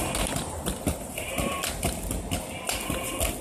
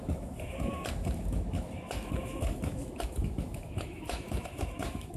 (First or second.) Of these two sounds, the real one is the first